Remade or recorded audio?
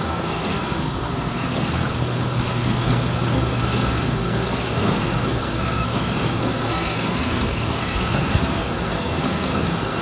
remade